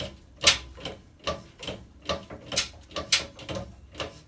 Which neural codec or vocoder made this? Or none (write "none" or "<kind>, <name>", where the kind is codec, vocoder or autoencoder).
none